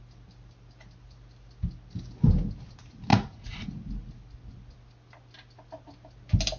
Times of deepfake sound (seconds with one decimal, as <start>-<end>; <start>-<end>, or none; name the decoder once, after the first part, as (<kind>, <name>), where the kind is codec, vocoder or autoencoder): 3.1-3.7 (vocoder, Vocos)